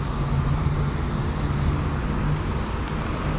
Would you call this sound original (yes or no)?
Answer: yes